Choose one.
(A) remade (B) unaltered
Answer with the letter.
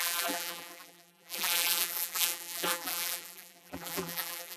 A